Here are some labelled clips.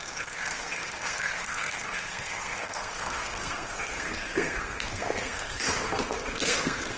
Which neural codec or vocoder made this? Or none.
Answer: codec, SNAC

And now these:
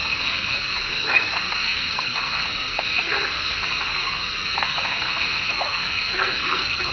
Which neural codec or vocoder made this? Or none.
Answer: codec, SNAC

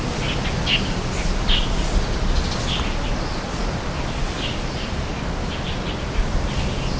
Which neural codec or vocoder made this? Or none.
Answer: none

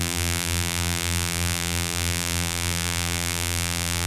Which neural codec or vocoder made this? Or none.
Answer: vocoder, BigVGAN v2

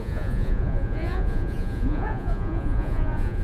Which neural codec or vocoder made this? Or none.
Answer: vocoder, Vocos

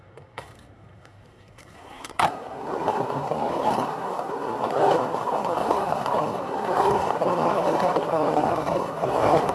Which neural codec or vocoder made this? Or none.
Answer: codec, SNAC